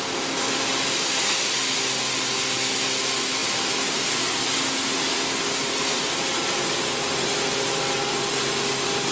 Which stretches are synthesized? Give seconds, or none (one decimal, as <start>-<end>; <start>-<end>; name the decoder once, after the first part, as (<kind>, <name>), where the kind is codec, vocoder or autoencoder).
none